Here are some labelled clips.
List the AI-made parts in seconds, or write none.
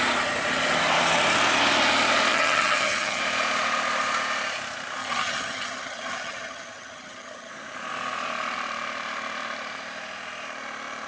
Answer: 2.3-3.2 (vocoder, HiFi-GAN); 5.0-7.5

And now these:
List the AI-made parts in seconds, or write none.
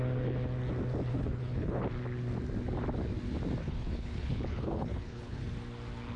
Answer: 1.1-1.8 (codec, HILCodec); 3.6-5.4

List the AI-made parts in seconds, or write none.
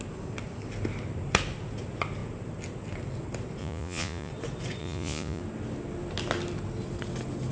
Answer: 3.6-4.3 (vocoder, Vocos); 4.8-5.4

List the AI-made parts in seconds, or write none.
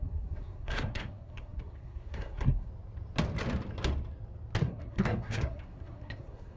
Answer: 0.0-2.7 (codec, SNAC); 4.6-6.6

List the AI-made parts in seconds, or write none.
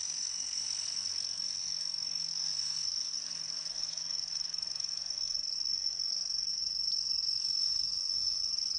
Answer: 0.0-8.8 (codec, SNAC)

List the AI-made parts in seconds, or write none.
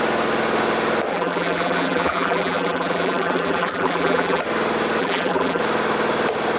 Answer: 1.1-4.4 (vocoder, BigVGAN v2); 5.0-5.6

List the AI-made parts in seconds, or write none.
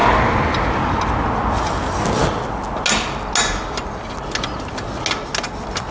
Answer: none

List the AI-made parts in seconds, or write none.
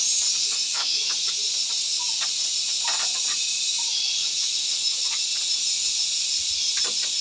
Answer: 0.4-1.0 (autoencoder, DAC-VAE); 4.2-5.1